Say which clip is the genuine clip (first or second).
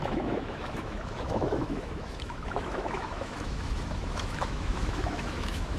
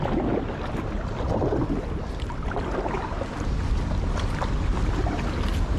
second